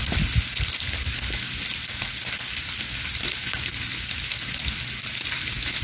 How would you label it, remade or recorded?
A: recorded